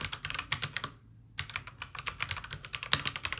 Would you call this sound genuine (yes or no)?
yes